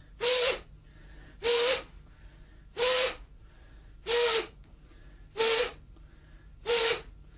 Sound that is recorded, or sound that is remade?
recorded